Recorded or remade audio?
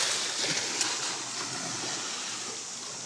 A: recorded